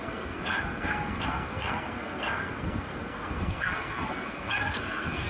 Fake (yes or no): yes